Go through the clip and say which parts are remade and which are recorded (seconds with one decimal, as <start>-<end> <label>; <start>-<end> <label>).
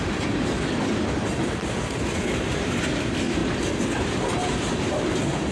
0.0-5.5 recorded